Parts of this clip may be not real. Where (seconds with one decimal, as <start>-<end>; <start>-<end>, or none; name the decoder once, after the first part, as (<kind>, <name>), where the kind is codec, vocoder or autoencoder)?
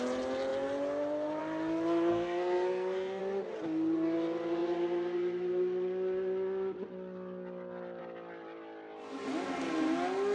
2.1-3.2 (codec, SNAC)